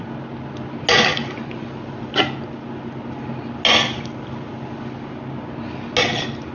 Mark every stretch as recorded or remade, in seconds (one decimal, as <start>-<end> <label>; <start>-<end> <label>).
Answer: 0.0-6.5 recorded